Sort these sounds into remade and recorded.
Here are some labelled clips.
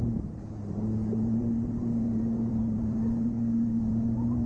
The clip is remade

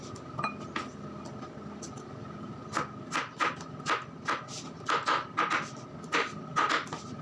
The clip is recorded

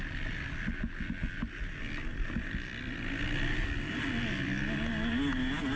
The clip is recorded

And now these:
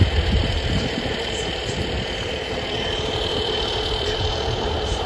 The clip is remade